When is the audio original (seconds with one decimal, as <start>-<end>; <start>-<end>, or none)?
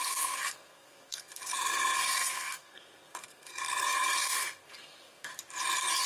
5.3-6.1